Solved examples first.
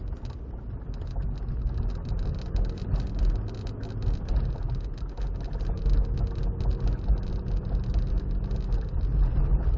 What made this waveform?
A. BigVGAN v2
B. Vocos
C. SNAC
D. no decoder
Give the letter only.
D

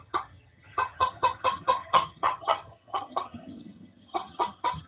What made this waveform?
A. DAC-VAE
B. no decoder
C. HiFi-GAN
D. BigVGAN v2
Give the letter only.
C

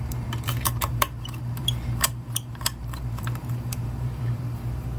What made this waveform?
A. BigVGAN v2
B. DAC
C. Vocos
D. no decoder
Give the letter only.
A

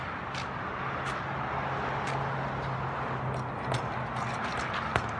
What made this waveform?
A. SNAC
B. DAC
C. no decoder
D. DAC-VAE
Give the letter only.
C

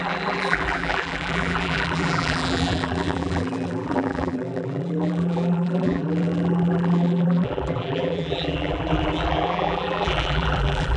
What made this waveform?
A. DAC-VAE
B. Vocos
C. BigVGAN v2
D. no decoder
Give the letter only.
C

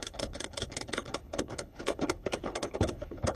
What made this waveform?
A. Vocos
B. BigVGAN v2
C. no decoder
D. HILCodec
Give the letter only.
D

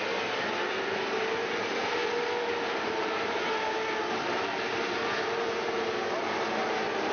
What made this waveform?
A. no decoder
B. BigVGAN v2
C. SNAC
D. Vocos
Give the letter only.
A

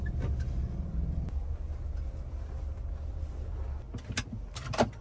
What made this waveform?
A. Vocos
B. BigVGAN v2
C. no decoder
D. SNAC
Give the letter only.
C